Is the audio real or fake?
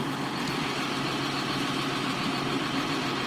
real